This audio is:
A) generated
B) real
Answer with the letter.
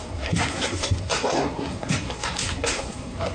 A